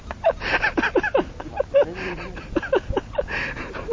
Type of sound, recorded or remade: recorded